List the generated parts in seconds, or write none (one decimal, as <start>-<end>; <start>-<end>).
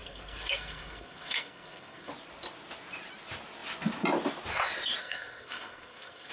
0.0-2.1; 5.0-6.3